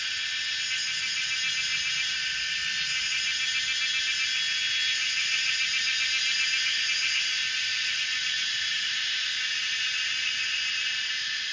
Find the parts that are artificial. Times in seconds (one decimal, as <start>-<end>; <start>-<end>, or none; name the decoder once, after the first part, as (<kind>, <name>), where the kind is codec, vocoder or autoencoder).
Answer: none